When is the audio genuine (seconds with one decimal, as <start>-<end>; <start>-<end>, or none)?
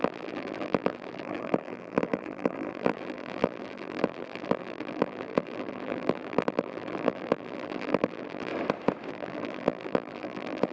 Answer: 8.5-9.1